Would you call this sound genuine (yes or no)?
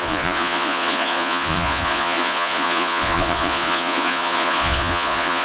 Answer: no